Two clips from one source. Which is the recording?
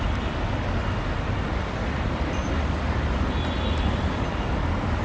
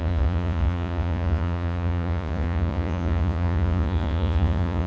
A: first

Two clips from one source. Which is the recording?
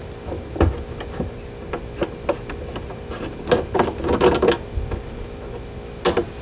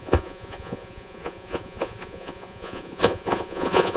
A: first